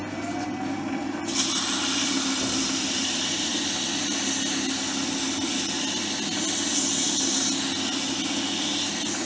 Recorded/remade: recorded